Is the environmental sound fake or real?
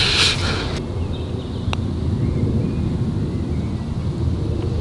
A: real